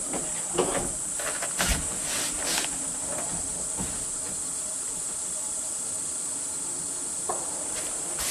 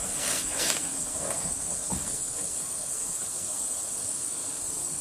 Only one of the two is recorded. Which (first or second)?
first